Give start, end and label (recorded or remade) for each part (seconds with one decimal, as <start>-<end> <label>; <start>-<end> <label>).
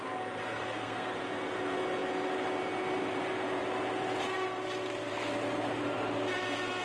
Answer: 0.0-0.4 recorded; 0.4-1.1 remade; 1.1-6.8 recorded